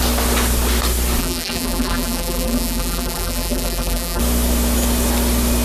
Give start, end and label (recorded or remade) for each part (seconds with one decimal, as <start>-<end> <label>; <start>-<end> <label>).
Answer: 0.0-1.2 recorded; 1.2-4.2 remade; 4.2-5.6 recorded